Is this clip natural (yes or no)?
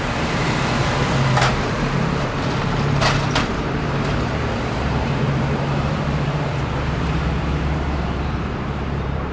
no